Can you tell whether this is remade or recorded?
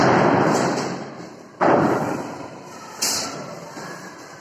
remade